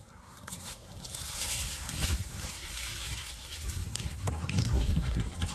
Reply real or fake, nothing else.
fake